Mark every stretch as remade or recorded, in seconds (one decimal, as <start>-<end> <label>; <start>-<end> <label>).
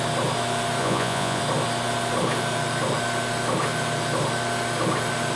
0.0-0.8 recorded; 0.8-1.4 remade; 1.4-5.4 recorded